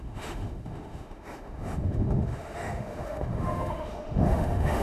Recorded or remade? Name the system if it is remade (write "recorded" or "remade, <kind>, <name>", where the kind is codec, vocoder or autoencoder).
remade, autoencoder, DAC-VAE